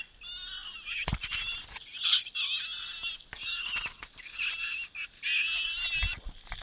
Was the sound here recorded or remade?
recorded